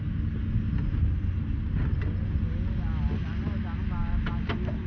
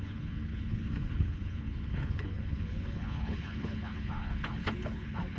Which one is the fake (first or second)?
second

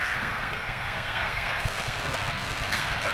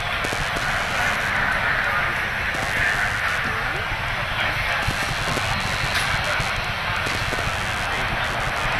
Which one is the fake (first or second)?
first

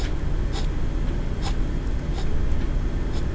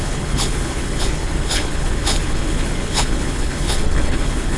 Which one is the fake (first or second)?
second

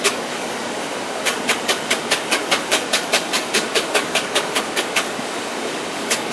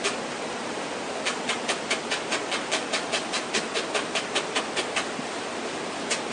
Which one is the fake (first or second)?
first